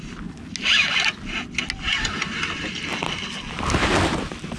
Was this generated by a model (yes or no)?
no